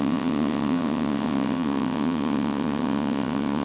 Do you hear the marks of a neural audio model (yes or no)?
yes